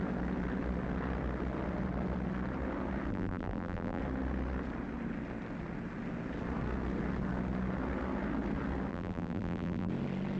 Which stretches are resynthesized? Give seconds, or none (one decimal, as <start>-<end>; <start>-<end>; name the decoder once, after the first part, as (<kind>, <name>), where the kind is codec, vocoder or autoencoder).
3.1-4.0 (vocoder, BigVGAN v2); 8.9-9.9